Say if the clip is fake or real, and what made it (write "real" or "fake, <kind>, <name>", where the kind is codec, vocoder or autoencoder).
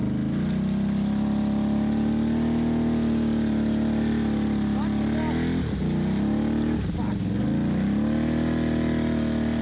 real